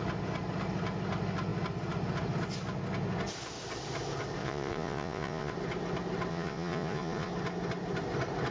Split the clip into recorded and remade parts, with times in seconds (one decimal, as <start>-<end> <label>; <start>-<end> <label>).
0.0-4.4 recorded; 4.4-5.5 remade; 5.5-6.3 recorded; 6.3-7.3 remade; 7.3-8.5 recorded